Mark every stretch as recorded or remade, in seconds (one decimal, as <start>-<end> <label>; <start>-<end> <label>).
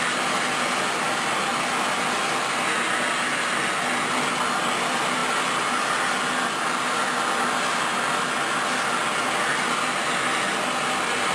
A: 0.0-11.3 recorded